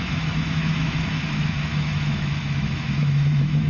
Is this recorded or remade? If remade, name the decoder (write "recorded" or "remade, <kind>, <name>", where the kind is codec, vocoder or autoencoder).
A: remade, autoencoder, DAC-VAE